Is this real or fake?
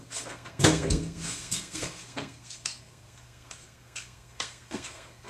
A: fake